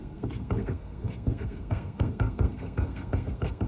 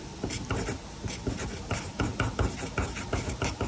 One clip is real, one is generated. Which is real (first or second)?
second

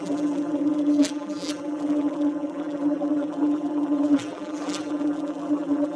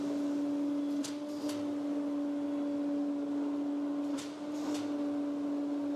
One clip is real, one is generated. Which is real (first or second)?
second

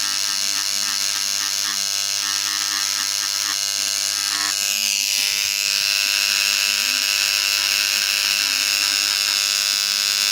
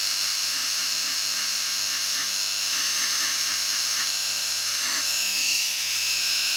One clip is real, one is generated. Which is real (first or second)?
first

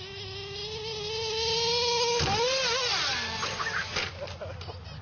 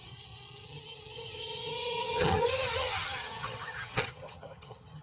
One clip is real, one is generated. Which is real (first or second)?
first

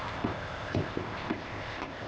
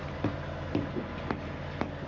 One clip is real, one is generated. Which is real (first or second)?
second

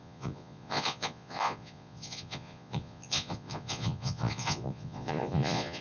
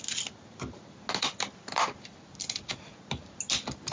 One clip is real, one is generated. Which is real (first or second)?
second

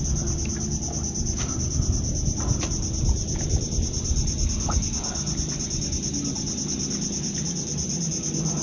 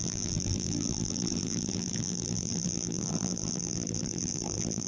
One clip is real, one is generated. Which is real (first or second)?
first